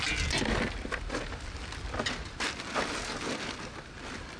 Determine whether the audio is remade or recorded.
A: recorded